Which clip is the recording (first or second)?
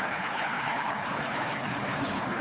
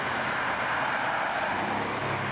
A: second